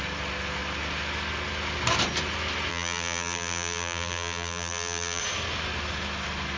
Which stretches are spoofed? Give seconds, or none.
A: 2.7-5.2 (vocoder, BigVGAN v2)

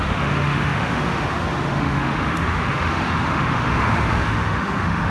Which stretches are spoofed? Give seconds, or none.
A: 0.0-5.1 (autoencoder, DAC-VAE)

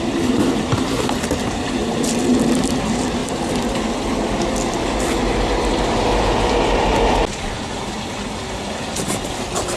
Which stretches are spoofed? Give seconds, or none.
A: none

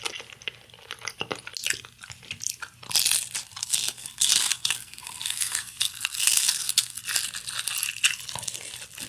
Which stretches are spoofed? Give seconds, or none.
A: 3.6-7.0 (codec, SNAC)